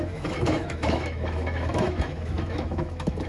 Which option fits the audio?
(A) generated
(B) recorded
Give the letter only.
A